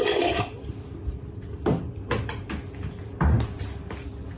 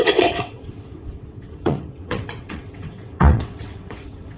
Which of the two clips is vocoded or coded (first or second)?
second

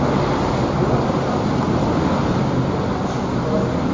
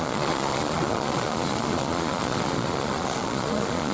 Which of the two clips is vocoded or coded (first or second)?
second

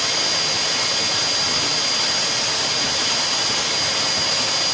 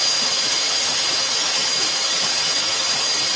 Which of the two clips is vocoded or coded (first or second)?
second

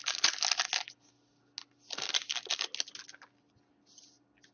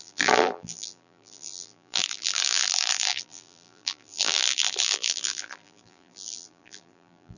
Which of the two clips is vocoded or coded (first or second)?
second